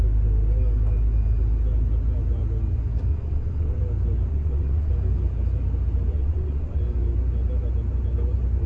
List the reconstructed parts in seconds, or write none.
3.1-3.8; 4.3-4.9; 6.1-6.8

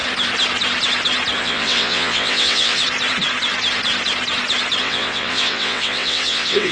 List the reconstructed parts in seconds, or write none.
1.4-2.8; 4.8-6.7

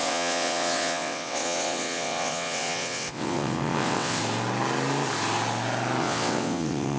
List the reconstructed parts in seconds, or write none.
0.0-4.2; 6.0-7.0

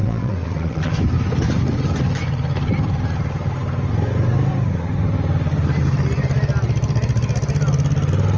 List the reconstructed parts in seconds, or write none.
0.0-0.9

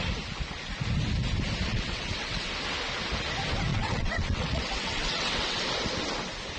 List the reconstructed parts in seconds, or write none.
1.7-2.5; 3.7-5.6

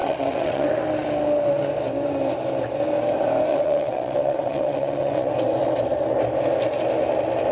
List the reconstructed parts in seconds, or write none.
0.0-0.7; 3.5-5.3

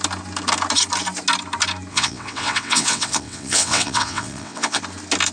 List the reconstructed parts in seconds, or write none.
1.9-4.8

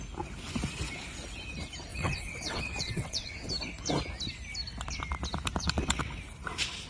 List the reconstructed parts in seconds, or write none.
1.9-3.5; 5.6-6.1